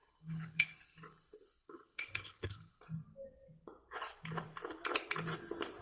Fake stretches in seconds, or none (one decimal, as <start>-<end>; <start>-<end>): 0.0-2.8